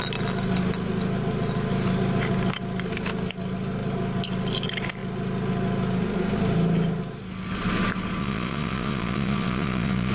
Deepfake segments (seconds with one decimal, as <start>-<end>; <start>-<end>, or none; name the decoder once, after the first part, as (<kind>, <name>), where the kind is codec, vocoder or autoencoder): 8.2-10.1 (vocoder, Vocos)